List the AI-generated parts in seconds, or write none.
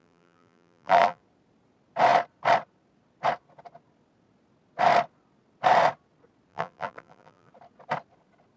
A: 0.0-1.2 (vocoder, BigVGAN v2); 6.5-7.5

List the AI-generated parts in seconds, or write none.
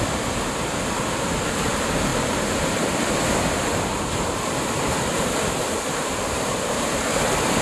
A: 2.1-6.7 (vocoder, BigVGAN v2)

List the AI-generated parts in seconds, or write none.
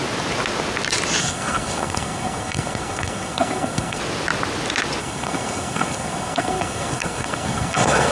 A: 1.2-4.0 (codec, SNAC); 5.0-8.1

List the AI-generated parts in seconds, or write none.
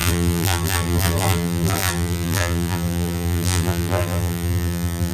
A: 0.0-5.1 (vocoder, BigVGAN v2)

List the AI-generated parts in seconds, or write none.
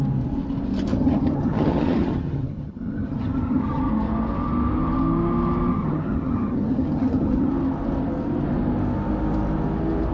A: 0.9-3.8 (vocoder, HiFi-GAN); 5.7-7.5